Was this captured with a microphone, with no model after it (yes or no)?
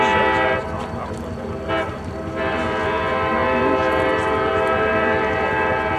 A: yes